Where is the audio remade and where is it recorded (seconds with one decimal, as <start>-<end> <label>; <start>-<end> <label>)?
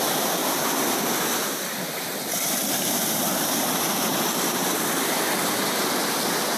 0.0-0.4 recorded; 0.4-1.2 remade; 1.2-6.6 recorded